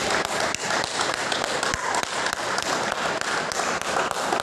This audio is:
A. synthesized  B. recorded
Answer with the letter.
B